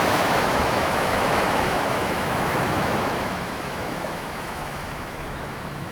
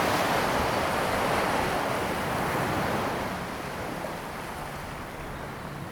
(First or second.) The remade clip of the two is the first